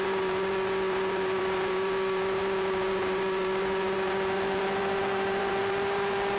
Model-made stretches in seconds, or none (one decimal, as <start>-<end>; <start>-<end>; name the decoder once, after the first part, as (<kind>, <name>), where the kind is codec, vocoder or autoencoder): 0.0-6.4 (vocoder, BigVGAN v2)